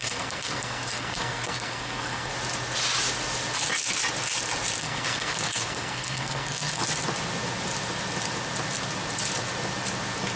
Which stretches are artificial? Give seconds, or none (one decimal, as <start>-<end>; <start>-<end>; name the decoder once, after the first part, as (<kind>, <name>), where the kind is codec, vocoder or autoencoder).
0.0-2.3 (codec, SNAC); 4.8-6.8